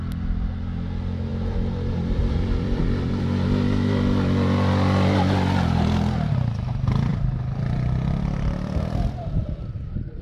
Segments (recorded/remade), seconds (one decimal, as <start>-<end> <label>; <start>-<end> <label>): 0.0-1.3 recorded; 1.3-2.8 remade; 2.8-7.1 recorded; 7.1-10.2 remade